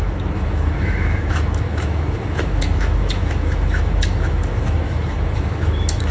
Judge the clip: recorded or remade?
remade